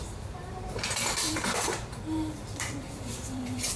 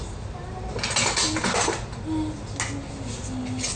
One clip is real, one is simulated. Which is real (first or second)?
second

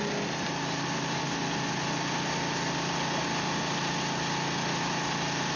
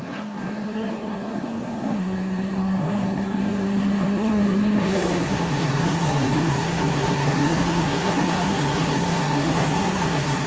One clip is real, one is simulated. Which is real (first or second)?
first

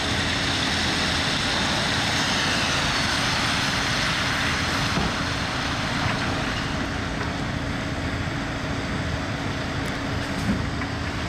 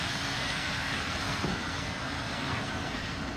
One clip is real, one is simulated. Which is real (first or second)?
first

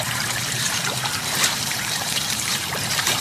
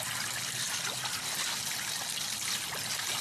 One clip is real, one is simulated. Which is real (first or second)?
second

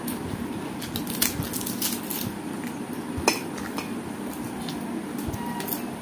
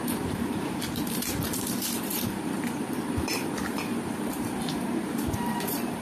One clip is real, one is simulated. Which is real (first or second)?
first